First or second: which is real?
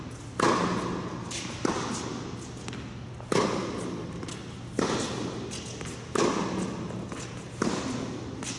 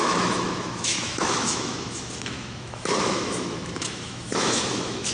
first